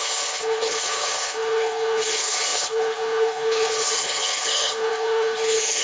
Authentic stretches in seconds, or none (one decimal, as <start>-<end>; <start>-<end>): none